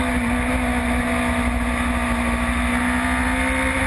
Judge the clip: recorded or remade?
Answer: recorded